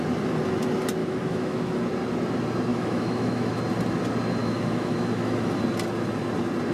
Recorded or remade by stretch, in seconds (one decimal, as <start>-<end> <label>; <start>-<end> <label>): 0.0-1.0 recorded; 1.0-1.8 remade; 1.8-2.7 recorded; 2.7-3.6 remade; 3.6-4.4 recorded; 4.4-5.6 remade; 5.6-6.7 recorded